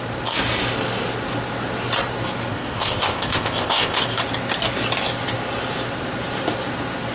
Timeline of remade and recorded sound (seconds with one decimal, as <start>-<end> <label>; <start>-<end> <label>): 0.0-2.5 recorded; 2.5-4.0 remade; 4.0-7.1 recorded